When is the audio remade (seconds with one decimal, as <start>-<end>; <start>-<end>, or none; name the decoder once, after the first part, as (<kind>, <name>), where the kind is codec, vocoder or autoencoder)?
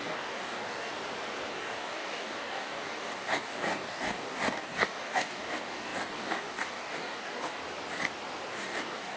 0.0-0.9 (codec, DAC); 1.5-7.6; 8.5-9.2